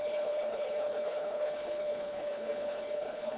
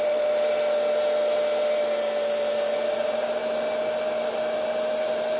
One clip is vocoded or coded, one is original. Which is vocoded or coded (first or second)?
first